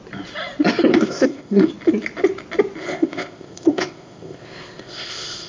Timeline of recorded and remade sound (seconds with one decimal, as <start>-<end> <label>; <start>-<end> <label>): 0.0-0.9 recorded; 0.9-1.7 remade; 1.7-2.8 recorded; 2.8-5.5 remade